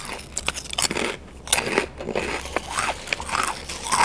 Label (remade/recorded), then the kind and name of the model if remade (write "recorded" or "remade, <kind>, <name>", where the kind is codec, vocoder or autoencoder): recorded